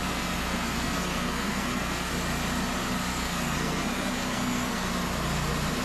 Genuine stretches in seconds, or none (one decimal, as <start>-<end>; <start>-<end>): 2.1-3.1; 4.9-5.8